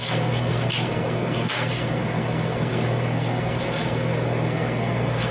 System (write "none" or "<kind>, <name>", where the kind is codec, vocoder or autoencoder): codec, SNAC